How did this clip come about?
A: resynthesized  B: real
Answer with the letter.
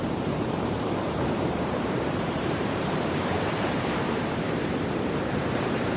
A